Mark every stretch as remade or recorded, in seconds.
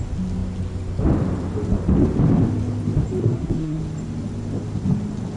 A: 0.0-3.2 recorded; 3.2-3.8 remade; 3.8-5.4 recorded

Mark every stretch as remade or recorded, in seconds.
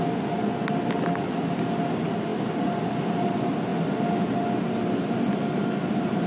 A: 0.0-6.3 recorded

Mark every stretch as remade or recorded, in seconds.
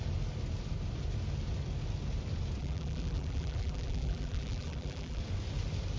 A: 0.0-2.6 recorded; 2.6-5.2 remade; 5.2-6.0 recorded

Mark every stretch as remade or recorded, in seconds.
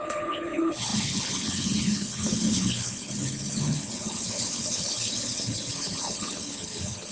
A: 0.0-7.1 remade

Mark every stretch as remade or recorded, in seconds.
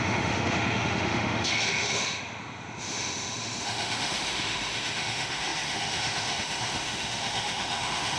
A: 0.0-8.2 remade